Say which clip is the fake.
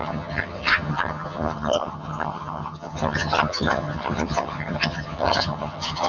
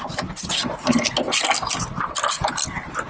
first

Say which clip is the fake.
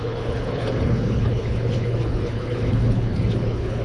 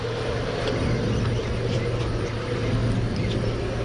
first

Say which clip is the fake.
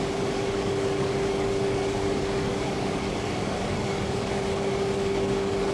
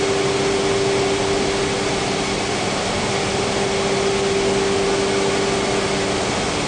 first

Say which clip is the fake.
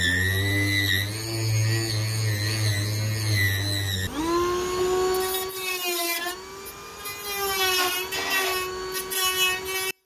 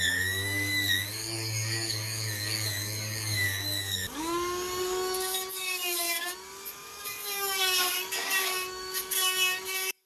second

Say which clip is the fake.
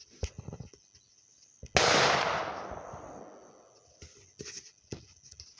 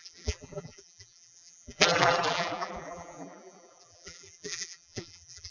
second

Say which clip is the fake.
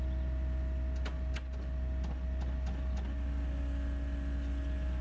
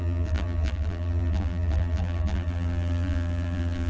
second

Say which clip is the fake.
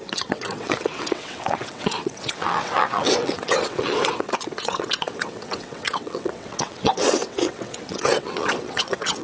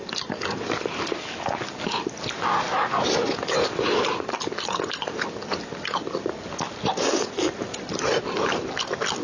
first